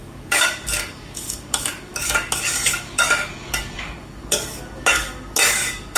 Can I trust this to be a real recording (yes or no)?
no